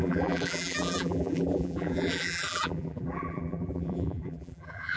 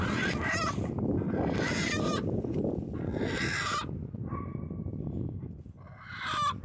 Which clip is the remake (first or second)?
first